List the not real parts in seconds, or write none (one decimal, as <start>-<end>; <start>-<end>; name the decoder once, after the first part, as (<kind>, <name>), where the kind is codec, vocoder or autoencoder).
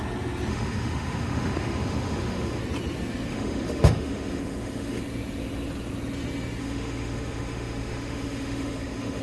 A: 0.5-2.6 (autoencoder, DAC-VAE); 3.3-5.0; 6.6-9.2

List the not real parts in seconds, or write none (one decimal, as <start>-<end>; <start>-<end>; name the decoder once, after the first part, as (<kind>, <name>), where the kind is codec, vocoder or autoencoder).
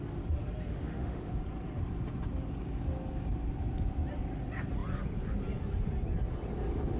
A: 0.7-1.3 (autoencoder, DAC-VAE)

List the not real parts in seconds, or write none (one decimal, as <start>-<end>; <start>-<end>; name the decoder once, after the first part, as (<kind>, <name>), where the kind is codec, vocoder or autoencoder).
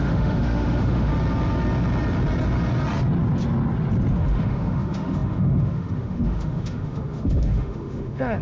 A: 0.0-1.1 (autoencoder, DAC-VAE); 4.1-8.4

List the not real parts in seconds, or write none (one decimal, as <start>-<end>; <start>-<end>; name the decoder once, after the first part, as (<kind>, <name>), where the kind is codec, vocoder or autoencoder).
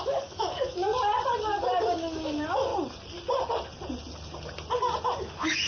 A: 0.0-0.9 (autoencoder, DAC-VAE); 1.8-2.7; 5.2-5.7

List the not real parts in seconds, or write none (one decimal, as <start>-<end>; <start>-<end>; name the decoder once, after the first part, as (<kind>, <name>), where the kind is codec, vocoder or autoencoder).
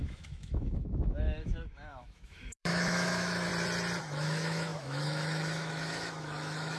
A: 0.0-3.5 (autoencoder, DAC-VAE); 4.0-6.8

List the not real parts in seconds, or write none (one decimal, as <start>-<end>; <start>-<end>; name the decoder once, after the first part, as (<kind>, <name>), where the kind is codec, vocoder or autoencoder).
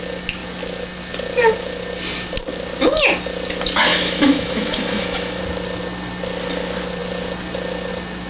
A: 3.9-5.4 (autoencoder, DAC-VAE)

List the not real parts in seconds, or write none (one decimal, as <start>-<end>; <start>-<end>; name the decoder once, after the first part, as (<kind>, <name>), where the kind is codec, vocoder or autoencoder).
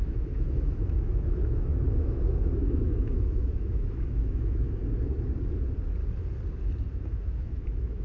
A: 0.0-4.8 (autoencoder, DAC-VAE); 6.9-8.0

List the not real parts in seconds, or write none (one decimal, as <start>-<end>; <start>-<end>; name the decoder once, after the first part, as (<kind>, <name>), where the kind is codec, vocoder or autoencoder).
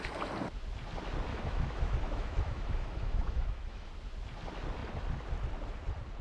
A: 1.3-3.9 (autoencoder, DAC-VAE)